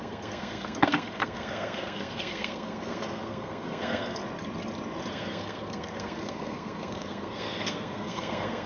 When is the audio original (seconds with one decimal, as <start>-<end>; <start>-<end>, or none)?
4.2-5.1